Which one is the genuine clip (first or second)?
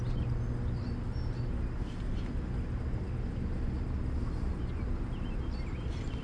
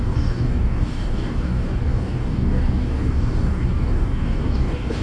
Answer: first